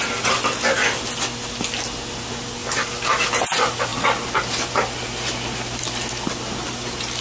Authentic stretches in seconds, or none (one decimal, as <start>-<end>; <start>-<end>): 0.0-7.2

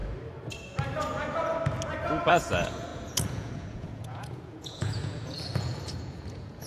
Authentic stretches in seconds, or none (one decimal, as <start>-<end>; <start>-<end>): 0.0-2.3

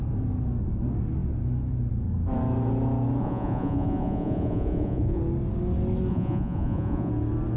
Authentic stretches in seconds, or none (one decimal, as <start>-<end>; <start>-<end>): 0.0-3.2; 5.2-6.1; 7.1-7.6

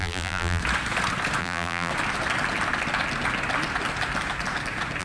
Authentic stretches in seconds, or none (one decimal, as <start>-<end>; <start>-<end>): 0.6-1.4; 1.9-5.0

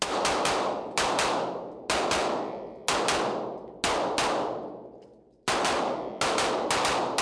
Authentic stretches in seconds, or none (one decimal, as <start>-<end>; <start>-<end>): 0.0-7.2

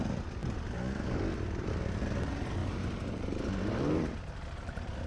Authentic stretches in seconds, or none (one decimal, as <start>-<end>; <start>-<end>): 0.0-5.1